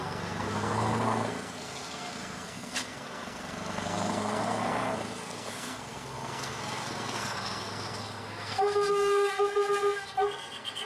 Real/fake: fake